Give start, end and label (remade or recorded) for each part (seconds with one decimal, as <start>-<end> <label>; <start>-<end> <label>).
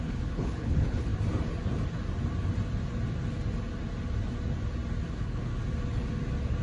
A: 0.0-1.1 remade; 1.1-5.1 recorded; 5.1-5.5 remade; 5.5-6.6 recorded